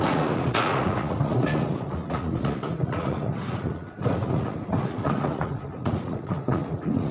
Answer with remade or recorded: remade